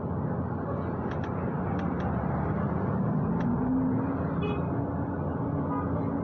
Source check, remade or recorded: recorded